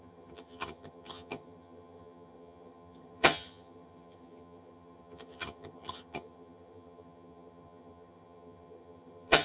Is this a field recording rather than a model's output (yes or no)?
no